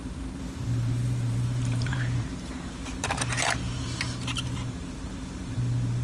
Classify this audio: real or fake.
fake